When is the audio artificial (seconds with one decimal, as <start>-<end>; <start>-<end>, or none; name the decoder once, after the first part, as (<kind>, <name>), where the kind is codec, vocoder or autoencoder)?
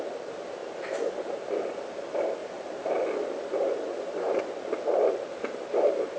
none